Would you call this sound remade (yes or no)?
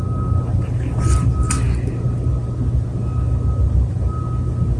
no